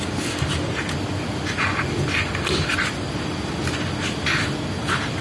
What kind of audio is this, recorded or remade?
recorded